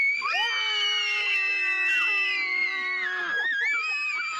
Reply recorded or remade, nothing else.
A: recorded